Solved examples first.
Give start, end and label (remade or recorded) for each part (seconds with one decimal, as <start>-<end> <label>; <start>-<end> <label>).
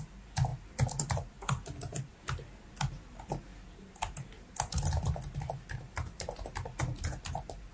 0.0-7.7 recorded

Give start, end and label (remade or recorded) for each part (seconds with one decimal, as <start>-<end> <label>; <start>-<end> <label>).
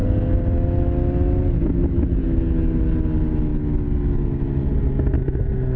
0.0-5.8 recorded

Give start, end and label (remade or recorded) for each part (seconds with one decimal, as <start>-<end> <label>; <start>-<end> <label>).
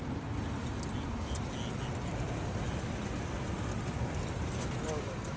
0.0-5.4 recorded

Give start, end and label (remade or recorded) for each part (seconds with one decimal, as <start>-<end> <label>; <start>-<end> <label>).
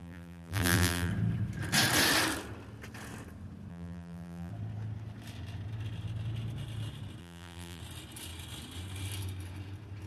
0.0-1.1 remade; 1.1-3.7 recorded; 3.7-4.5 remade; 4.5-7.2 recorded; 7.2-7.8 remade; 7.8-10.1 recorded